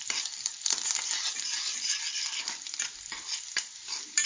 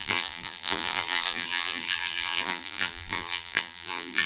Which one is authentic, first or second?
first